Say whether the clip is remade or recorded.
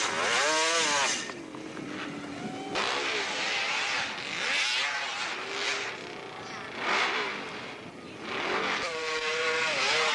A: recorded